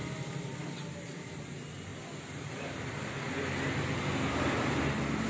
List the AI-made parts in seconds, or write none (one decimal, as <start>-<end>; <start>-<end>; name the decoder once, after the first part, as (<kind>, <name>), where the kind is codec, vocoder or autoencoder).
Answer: none